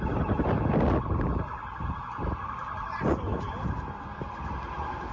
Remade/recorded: recorded